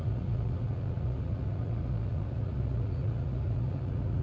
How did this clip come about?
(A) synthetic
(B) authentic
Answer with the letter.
A